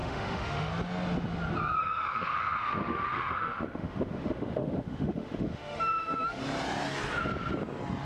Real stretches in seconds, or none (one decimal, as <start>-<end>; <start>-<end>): 0.7-1.8; 6.4-8.1

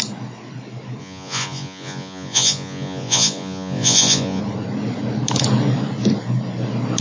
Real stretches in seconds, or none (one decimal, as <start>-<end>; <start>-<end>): 0.0-1.0; 4.4-7.0

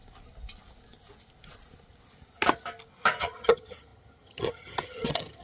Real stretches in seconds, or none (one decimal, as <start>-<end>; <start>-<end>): 0.0-3.2